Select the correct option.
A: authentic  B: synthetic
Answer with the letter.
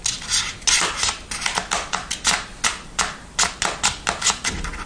A